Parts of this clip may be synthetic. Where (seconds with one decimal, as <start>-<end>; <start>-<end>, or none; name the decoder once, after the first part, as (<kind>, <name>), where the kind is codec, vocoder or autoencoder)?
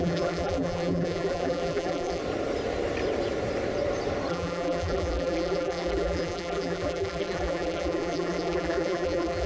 0.0-2.2 (vocoder, BigVGAN v2); 4.3-9.5